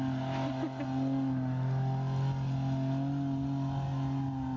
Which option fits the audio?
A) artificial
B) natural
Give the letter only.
B